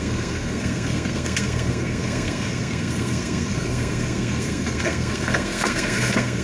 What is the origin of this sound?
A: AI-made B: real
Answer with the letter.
A